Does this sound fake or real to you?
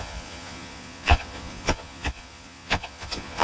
fake